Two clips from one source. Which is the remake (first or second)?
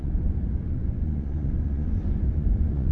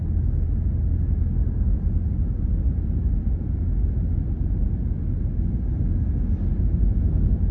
first